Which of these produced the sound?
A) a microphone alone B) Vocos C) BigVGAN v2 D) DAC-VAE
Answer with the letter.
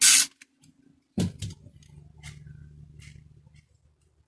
A